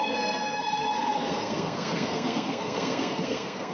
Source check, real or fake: fake